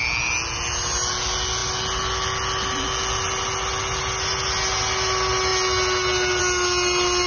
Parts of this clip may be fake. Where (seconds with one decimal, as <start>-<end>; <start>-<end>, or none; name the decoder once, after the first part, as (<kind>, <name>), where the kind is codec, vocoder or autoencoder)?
none